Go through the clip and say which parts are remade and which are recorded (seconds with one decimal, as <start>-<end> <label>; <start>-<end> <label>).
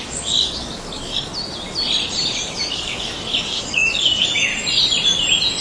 0.0-1.3 remade; 1.3-2.7 recorded; 2.7-4.5 remade; 4.5-5.6 recorded